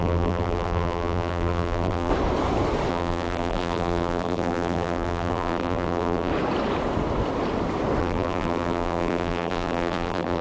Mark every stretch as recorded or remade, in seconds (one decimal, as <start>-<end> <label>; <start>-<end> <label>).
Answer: 0.0-2.1 remade; 2.1-2.9 recorded; 2.9-6.3 remade; 6.3-8.0 recorded; 8.0-10.4 remade